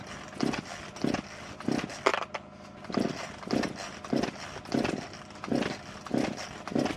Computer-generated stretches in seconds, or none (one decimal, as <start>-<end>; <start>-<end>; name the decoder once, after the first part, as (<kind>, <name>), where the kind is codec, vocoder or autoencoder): none